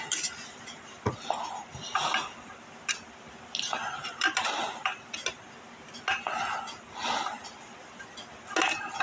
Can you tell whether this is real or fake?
real